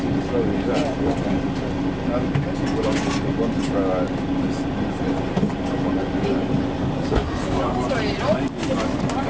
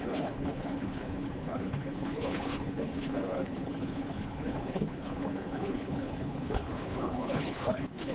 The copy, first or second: second